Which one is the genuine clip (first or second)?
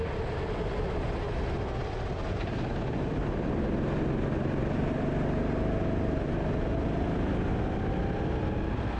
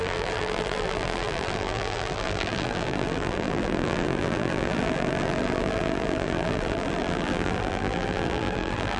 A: first